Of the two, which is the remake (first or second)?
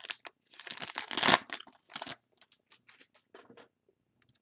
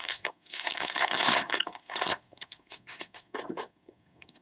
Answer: second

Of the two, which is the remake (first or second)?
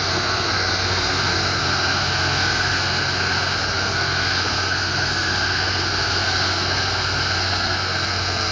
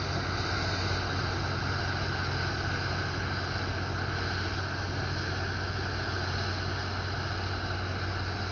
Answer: first